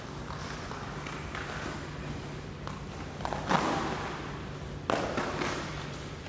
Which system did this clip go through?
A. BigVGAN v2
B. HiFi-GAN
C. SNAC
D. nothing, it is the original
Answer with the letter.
D